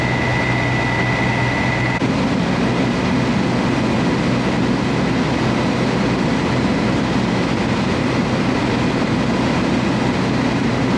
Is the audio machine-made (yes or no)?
no